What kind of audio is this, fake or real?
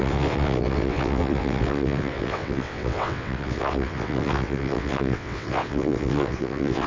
fake